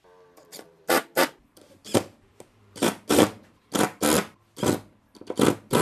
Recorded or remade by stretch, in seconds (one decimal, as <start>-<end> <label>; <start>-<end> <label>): 0.0-0.5 recorded; 0.5-4.0 remade; 4.0-5.8 recorded